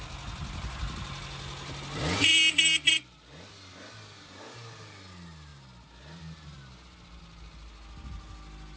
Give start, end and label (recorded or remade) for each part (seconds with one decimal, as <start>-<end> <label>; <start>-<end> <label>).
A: 0.0-8.8 recorded